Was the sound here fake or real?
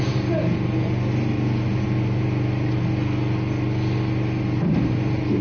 real